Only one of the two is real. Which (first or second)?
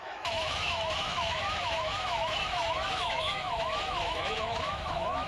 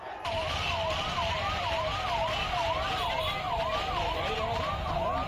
second